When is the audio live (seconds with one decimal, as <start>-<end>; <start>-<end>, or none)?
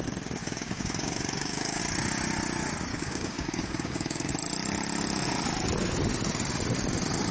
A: 0.0-0.4; 1.8-2.9; 4.3-7.3